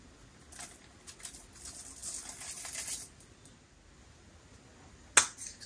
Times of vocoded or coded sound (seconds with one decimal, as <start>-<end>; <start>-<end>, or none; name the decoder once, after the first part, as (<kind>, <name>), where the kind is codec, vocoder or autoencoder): none